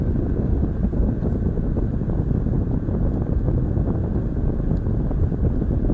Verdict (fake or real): real